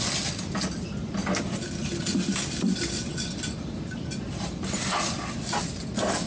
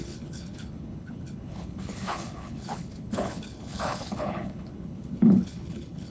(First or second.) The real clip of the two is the first